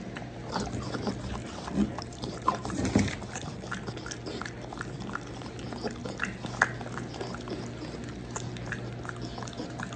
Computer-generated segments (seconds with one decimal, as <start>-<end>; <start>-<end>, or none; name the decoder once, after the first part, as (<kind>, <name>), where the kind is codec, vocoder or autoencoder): 1.9-3.1 (vocoder, BigVGAN v2)